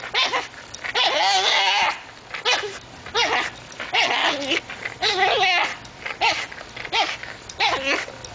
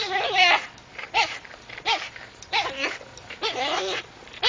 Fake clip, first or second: second